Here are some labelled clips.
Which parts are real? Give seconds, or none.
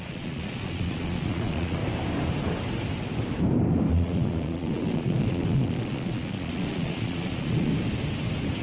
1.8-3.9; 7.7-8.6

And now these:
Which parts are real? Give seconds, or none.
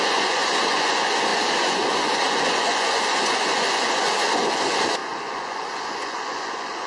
none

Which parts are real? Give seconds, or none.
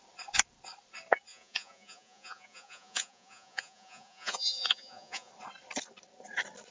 0.0-1.3; 5.3-6.7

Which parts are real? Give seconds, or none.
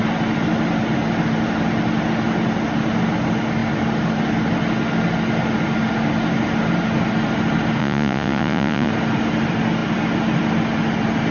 0.0-7.8; 8.9-11.3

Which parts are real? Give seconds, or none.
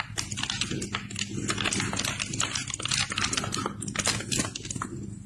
0.0-5.3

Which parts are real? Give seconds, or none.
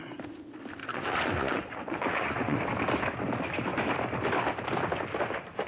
0.0-0.8; 2.6-5.7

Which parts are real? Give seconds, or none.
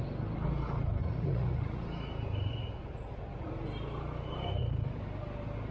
0.0-1.0; 1.8-5.7